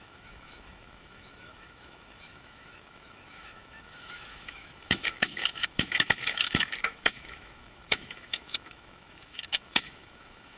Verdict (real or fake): fake